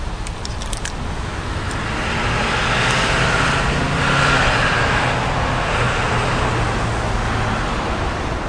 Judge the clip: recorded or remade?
recorded